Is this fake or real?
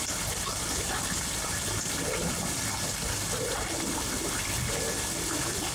real